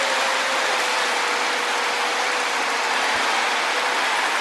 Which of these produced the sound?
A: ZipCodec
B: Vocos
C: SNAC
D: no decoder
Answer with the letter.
D